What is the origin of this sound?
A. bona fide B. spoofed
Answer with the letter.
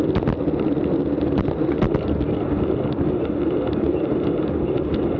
A